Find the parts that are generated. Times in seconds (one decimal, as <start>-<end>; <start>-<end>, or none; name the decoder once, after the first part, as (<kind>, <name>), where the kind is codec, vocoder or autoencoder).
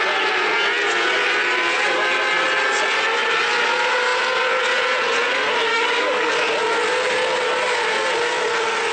5.7-6.3 (codec, DAC)